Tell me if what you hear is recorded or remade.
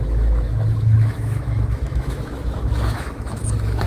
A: remade